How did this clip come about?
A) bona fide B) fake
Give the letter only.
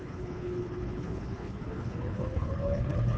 B